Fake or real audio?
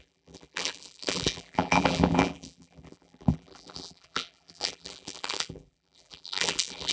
fake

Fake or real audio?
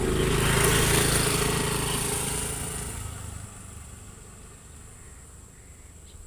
real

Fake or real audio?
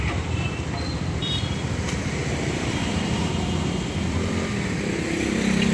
fake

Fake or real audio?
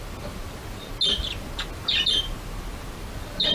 real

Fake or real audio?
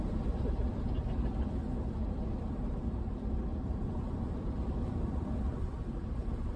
fake